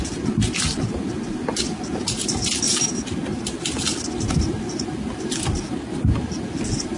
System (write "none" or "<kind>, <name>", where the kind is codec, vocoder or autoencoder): none